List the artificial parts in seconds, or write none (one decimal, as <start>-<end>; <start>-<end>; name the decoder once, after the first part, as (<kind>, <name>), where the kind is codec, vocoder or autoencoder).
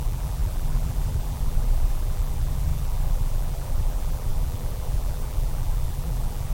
0.0-6.5 (vocoder, BigVGAN v2)